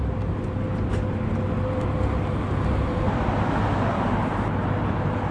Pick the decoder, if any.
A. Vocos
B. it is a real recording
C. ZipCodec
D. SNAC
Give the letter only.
B